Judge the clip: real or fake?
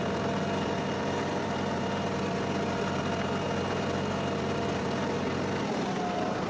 real